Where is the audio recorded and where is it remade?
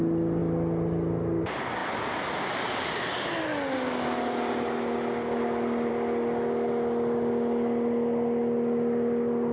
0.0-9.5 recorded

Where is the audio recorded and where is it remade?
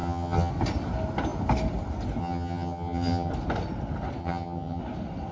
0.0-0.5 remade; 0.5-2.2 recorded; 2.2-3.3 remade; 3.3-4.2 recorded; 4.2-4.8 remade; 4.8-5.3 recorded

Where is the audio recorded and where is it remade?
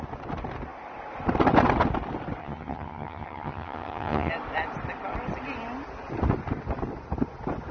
0.0-2.4 recorded; 2.4-4.3 remade; 4.3-7.7 recorded